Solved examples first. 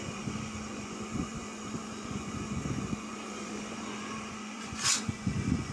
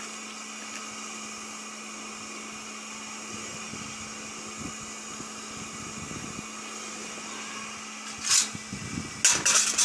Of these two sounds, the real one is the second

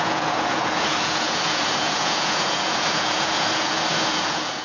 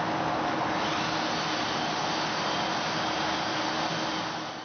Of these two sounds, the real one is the second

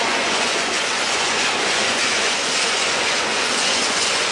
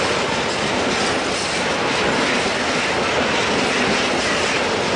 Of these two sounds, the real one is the second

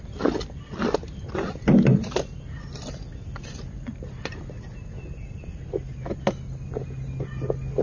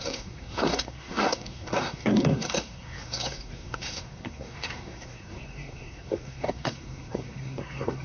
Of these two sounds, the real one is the first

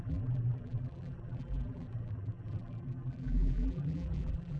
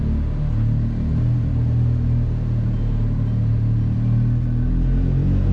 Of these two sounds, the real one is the second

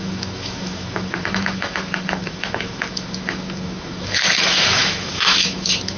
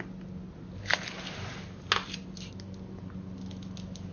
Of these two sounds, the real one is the second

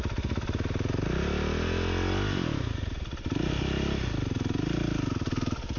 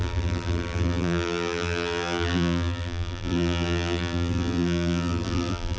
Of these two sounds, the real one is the first